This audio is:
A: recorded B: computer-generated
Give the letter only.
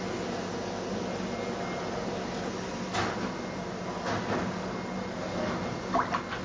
A